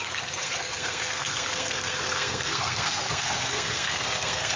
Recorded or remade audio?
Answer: remade